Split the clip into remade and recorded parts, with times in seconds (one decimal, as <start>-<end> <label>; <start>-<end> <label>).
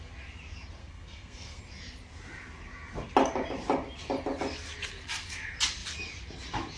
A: 0.0-0.8 recorded; 0.8-1.6 remade; 1.6-6.8 recorded